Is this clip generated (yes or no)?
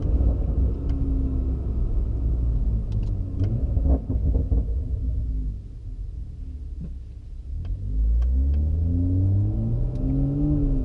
no